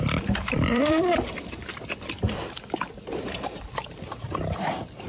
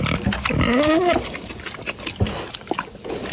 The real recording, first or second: second